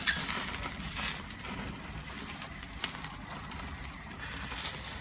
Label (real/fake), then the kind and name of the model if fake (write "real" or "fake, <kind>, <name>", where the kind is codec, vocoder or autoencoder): real